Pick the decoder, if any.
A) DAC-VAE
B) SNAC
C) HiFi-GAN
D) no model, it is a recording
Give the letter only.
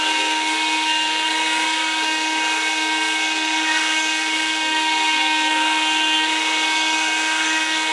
B